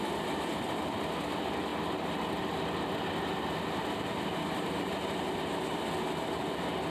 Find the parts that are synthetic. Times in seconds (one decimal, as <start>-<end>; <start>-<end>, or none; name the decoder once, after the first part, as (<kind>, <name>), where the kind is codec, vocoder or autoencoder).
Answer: none